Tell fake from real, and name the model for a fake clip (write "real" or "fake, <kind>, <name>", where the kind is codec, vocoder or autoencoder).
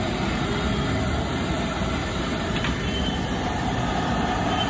real